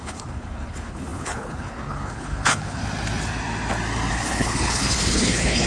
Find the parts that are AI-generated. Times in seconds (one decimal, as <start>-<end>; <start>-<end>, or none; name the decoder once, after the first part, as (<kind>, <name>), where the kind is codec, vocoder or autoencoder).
0.0-2.8 (codec, HILCodec); 4.1-5.7